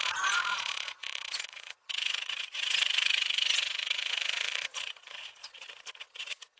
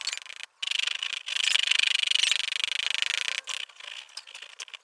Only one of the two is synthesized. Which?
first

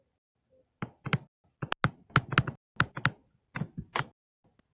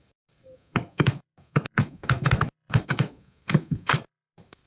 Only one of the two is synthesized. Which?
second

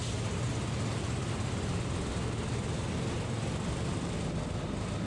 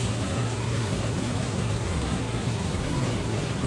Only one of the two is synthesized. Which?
second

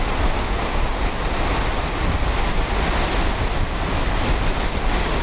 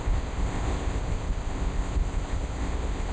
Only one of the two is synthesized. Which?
second